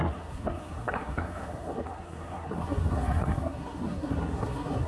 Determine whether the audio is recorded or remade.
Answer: remade